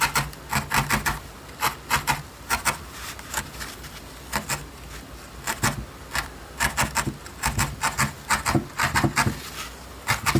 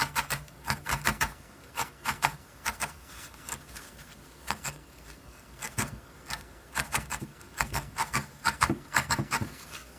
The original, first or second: first